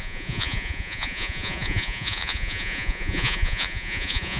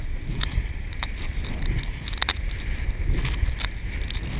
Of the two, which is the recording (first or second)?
second